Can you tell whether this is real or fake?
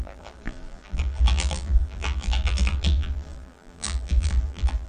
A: fake